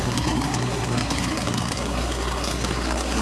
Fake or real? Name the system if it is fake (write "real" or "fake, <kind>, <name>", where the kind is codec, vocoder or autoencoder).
fake, codec, SNAC